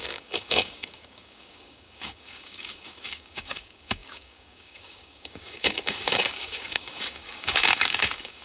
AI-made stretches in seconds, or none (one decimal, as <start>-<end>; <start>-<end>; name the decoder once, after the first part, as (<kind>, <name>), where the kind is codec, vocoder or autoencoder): 0.0-8.4 (codec, DAC)